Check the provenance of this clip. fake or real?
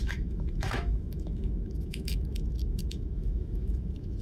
fake